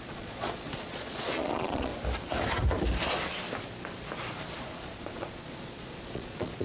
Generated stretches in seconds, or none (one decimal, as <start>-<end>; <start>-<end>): 0.0-1.9; 4.6-6.6